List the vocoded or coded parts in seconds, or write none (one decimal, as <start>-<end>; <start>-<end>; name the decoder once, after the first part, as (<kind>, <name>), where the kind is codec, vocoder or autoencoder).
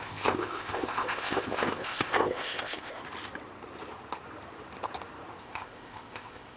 0.0-3.0 (codec, ZipCodec); 5.4-6.6